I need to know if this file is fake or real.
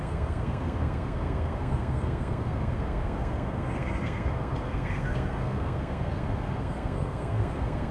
fake